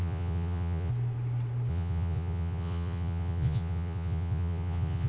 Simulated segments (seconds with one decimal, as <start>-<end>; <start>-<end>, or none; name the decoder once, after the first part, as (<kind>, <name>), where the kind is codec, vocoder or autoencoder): 0.0-0.9 (vocoder, Vocos); 1.7-5.1